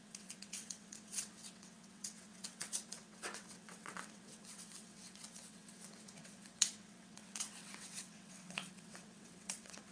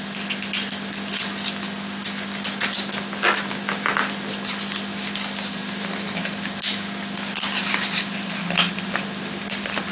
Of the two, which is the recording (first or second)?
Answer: second